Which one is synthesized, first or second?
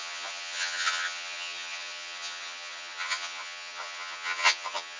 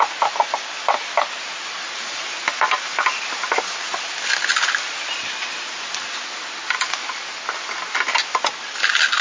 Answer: first